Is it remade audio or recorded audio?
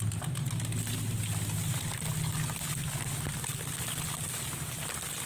recorded